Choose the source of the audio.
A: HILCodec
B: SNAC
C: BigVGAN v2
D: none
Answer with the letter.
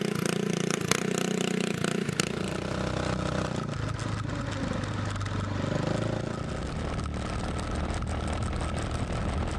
D